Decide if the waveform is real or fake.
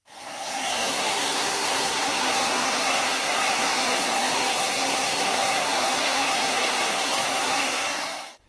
fake